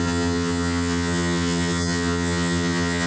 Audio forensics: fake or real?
fake